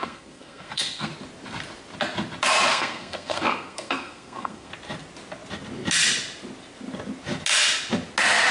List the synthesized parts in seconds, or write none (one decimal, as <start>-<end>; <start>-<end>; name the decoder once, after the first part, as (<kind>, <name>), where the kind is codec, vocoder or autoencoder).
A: 0.0-1.1 (codec, SNAC); 2.7-4.7